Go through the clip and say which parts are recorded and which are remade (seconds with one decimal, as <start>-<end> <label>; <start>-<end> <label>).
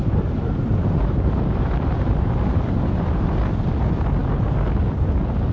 0.0-3.3 remade; 3.3-5.5 recorded